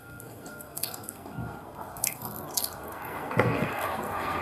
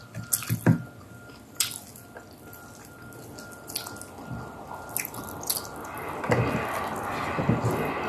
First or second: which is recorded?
second